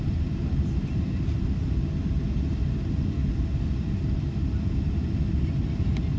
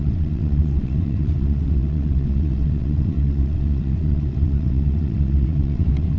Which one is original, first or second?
first